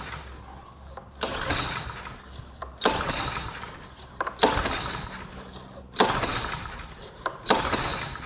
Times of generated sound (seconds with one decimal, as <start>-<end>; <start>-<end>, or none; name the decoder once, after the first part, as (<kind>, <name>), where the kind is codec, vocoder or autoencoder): 2.6-5.8 (vocoder, BigVGAN v2); 6.3-7.8